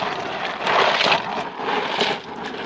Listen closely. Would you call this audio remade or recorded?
recorded